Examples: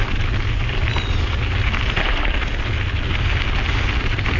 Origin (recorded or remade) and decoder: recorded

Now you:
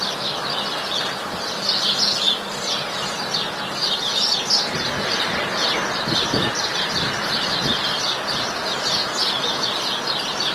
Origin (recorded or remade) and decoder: recorded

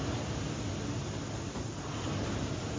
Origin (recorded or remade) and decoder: recorded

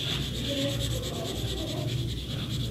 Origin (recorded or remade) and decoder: recorded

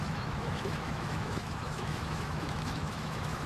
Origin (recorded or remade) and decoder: remade, autoencoder, DAC-VAE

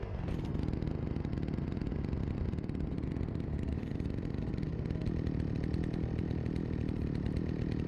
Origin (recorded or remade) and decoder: recorded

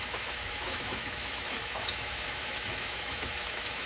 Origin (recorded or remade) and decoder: remade, autoencoder, DAC-VAE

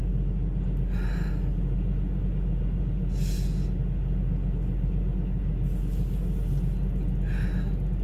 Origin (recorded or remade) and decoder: recorded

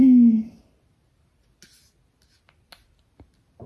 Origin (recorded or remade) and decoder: recorded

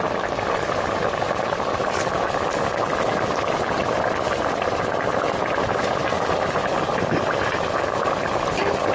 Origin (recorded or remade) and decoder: recorded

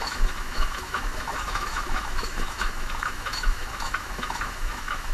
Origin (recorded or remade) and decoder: remade, autoencoder, DAC-VAE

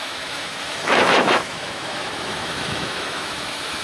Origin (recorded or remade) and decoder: remade, autoencoder, DAC-VAE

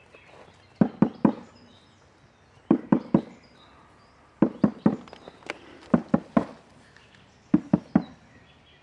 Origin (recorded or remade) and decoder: recorded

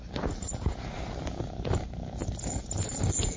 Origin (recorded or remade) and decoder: recorded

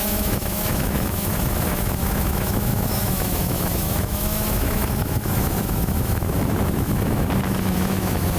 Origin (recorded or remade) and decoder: remade, autoencoder, DAC-VAE